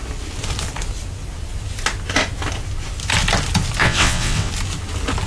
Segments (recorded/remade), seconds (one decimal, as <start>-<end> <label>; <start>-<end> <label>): 0.0-3.8 recorded; 3.8-4.5 remade; 4.5-5.3 recorded